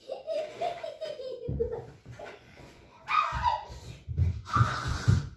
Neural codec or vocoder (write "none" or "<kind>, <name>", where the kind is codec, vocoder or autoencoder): vocoder, Vocos